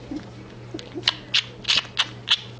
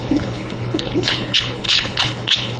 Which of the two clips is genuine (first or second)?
first